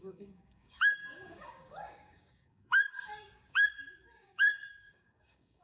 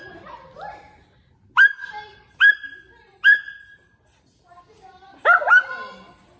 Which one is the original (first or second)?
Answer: second